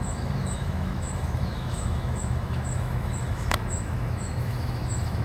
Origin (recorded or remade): remade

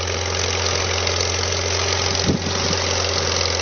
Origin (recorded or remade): recorded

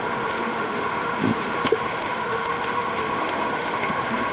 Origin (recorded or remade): remade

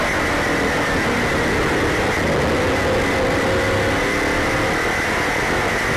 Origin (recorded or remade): recorded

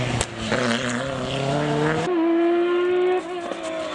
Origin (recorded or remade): recorded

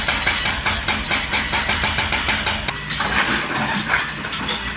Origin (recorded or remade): recorded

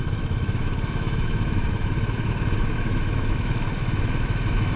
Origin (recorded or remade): remade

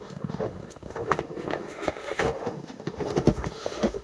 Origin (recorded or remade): remade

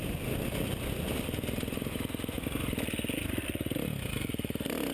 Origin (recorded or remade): recorded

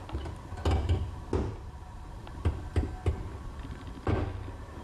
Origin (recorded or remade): recorded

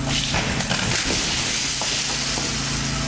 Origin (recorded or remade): recorded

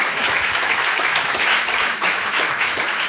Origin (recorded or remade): remade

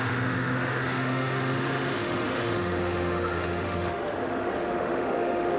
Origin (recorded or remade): remade